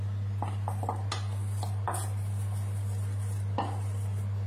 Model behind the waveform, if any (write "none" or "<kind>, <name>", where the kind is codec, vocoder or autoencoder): none